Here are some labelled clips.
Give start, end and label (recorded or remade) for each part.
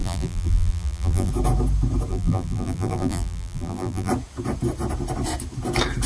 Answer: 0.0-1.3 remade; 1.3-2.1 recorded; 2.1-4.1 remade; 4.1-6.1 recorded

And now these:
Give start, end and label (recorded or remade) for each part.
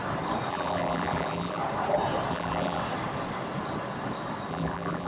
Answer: 0.0-0.5 recorded; 0.5-1.6 remade; 1.6-2.3 recorded; 2.3-2.8 remade; 2.8-4.5 recorded; 4.5-5.1 remade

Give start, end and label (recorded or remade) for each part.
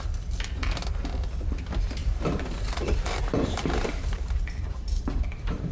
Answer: 0.0-2.0 recorded; 2.0-5.7 remade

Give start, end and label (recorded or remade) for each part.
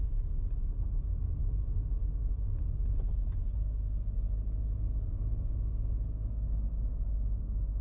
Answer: 0.0-7.8 recorded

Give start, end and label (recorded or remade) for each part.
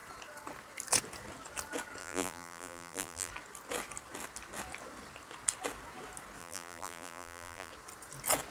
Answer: 0.0-2.0 recorded; 2.0-3.3 remade; 3.3-6.4 recorded; 6.4-7.7 remade; 7.7-8.5 recorded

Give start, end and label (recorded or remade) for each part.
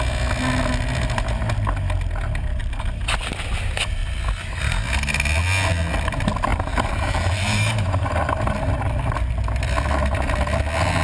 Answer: 0.0-2.6 recorded; 2.6-3.1 remade; 3.1-6.5 recorded; 6.5-8.1 remade; 8.1-11.0 recorded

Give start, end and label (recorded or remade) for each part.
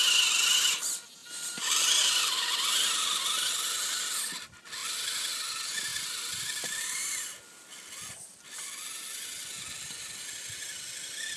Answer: 0.0-1.2 recorded; 1.2-3.5 remade; 3.5-5.9 recorded; 5.9-7.0 remade; 7.0-11.4 recorded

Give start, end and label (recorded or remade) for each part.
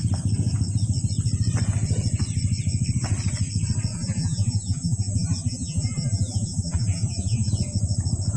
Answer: 0.0-3.9 recorded; 3.9-7.5 remade; 7.5-8.4 recorded